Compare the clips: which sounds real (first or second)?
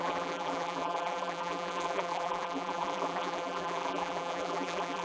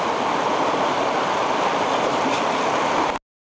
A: second